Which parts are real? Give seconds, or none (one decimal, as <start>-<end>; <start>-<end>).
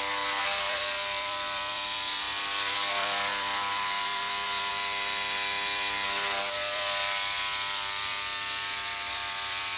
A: none